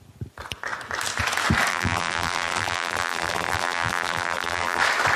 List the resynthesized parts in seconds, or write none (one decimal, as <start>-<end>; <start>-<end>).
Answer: 1.7-4.8